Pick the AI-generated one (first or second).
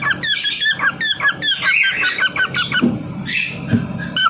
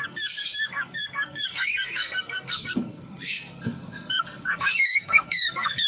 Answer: second